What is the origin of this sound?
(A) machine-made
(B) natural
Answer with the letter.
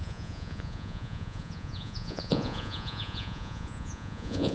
A